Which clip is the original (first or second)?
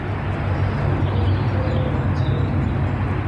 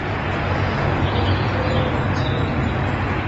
first